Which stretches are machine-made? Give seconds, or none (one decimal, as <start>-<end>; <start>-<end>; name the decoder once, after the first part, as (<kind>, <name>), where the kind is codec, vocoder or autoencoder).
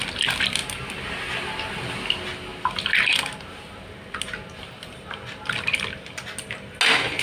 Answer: none